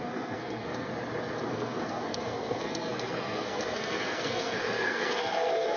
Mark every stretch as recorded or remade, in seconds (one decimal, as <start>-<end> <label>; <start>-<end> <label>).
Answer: 0.0-0.9 remade; 0.9-1.5 recorded; 1.5-5.8 remade